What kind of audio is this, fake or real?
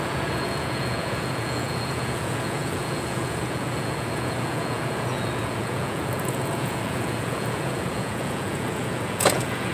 fake